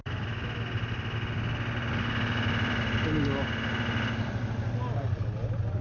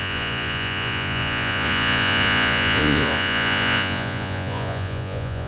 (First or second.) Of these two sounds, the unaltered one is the first